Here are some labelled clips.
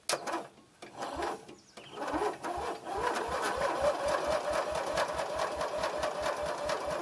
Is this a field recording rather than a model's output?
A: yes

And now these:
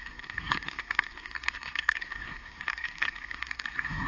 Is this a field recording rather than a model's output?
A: no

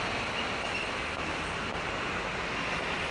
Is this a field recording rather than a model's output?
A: yes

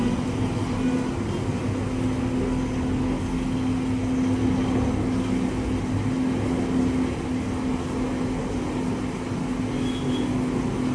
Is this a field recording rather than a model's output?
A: yes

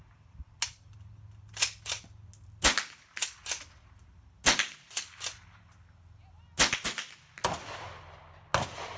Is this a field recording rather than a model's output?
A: yes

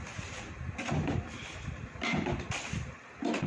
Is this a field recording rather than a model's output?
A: yes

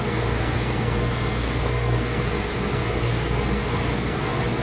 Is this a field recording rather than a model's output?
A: no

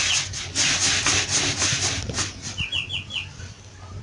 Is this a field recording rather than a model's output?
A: yes